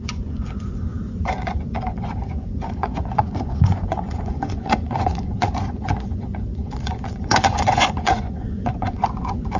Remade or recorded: remade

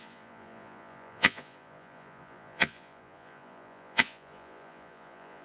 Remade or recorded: remade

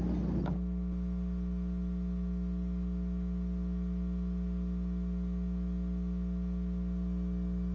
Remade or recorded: recorded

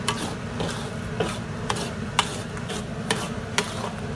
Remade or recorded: recorded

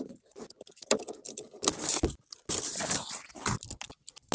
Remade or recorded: recorded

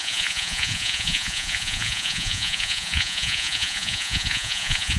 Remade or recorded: remade